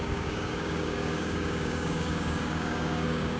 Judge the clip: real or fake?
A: fake